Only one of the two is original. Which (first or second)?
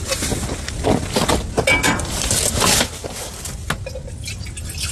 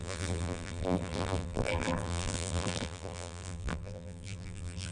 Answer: first